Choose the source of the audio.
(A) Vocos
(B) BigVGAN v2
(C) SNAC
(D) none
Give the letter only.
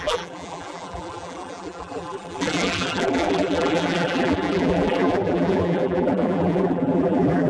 B